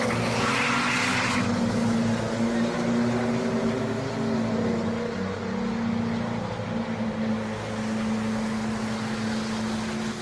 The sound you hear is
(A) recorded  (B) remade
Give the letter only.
A